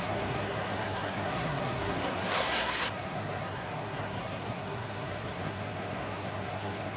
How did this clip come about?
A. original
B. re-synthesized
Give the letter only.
B